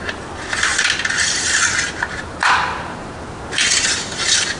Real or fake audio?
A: real